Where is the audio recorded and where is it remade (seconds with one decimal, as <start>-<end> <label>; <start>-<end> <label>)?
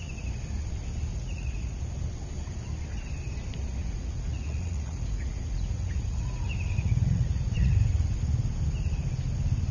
0.0-1.1 recorded; 1.1-1.8 remade; 1.8-3.8 recorded; 3.8-7.7 remade; 7.7-9.7 recorded